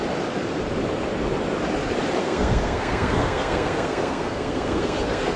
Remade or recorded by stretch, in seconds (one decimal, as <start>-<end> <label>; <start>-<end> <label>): 0.0-2.2 recorded; 2.2-5.4 remade